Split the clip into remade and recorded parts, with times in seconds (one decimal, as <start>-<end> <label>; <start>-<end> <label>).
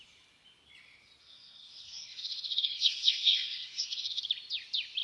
0.0-1.2 recorded; 1.2-4.2 remade; 4.2-5.0 recorded